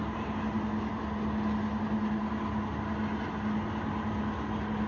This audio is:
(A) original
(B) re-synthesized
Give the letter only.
A